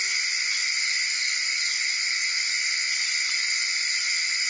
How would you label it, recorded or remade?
recorded